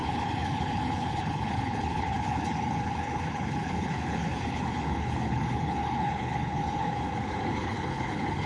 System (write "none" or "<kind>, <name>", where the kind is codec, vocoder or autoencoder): codec, HILCodec